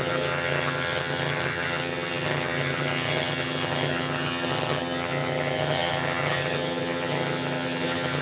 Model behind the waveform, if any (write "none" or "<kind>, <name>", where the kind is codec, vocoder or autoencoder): vocoder, HiFi-GAN